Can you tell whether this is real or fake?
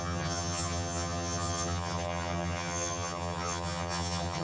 fake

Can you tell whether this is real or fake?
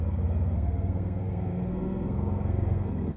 fake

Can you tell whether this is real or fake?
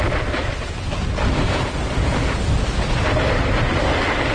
real